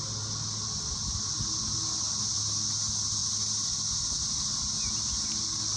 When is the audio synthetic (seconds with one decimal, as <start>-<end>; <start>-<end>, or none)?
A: none